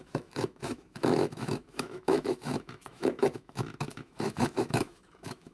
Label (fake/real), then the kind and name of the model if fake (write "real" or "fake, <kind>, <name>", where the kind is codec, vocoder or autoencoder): fake, autoencoder, DAC-VAE